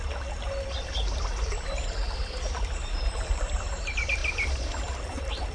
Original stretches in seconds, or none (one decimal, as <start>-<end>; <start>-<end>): 0.0-4.2; 5.0-5.5